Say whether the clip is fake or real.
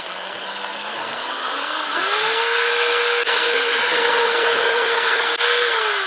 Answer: fake